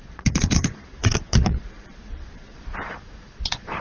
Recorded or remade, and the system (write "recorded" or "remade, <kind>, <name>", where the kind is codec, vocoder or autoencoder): remade, vocoder, Vocos